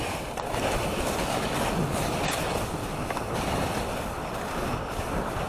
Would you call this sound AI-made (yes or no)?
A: no